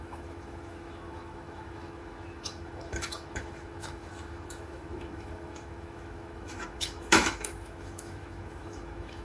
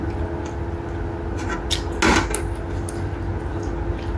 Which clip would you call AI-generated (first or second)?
first